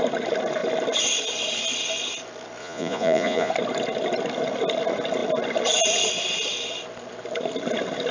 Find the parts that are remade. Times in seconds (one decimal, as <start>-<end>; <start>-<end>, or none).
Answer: 2.6-3.5